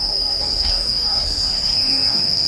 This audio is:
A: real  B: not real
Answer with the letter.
B